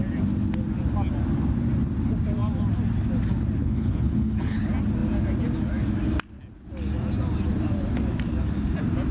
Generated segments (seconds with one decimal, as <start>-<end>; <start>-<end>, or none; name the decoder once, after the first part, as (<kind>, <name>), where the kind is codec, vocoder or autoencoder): 3.6-4.6 (codec, HILCodec)

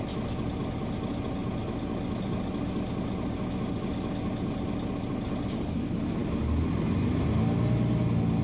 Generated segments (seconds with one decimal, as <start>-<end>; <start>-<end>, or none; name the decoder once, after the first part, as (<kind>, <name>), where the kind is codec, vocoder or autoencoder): none

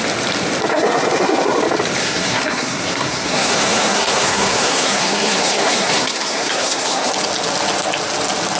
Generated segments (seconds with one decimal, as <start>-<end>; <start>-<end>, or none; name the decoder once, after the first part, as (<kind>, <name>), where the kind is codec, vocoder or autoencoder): 0.7-1.6 (codec, SNAC); 2.0-7.1

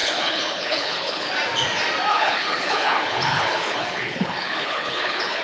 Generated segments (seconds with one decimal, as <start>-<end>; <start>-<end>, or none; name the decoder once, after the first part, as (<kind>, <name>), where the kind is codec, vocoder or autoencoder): 0.0-1.3 (codec, HILCodec); 2.1-5.4